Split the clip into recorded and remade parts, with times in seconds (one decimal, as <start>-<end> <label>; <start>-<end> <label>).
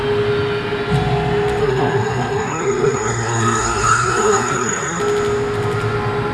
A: 0.0-1.6 recorded; 1.6-5.0 remade; 5.0-6.3 recorded